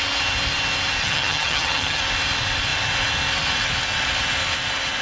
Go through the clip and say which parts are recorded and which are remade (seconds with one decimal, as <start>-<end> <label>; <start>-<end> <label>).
0.0-1.0 recorded; 1.0-2.0 remade; 2.0-5.0 recorded